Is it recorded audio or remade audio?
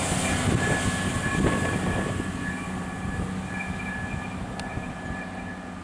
recorded